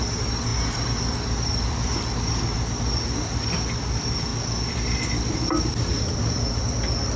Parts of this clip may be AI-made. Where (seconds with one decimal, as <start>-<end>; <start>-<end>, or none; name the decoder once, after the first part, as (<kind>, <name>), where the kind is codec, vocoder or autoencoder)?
none